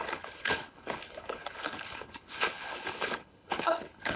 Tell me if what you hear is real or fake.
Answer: fake